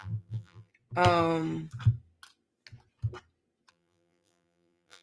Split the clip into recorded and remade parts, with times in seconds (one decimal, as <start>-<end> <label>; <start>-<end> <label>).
0.0-0.7 remade; 0.7-3.7 recorded; 3.7-5.0 remade